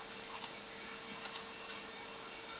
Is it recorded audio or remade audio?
recorded